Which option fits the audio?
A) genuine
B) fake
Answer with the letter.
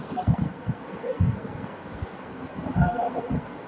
B